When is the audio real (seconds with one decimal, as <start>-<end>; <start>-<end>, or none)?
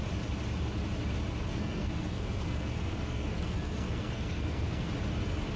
0.0-1.5; 4.9-5.6